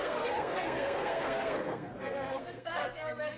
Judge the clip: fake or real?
fake